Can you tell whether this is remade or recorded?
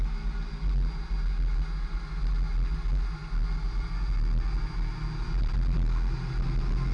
recorded